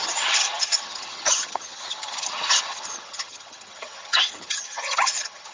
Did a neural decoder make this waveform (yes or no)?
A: yes